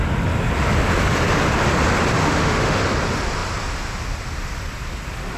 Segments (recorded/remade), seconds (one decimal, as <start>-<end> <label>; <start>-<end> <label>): 0.0-2.2 recorded; 2.2-2.8 remade; 2.8-5.4 recorded